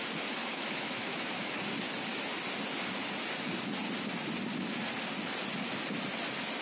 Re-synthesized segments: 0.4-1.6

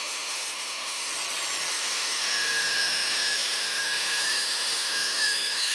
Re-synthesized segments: 0.0-1.1; 1.7-5.7

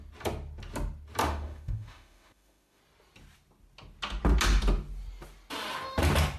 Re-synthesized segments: 1.2-2.8